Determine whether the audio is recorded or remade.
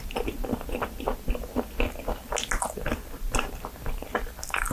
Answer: recorded